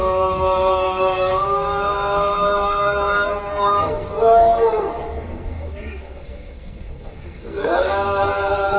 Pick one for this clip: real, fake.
fake